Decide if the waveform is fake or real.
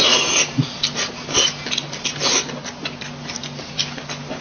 real